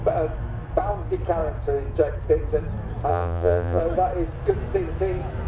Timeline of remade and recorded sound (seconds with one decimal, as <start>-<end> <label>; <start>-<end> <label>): 0.0-3.1 recorded; 3.1-3.8 remade; 3.8-5.5 recorded